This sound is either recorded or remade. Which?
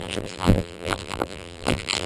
remade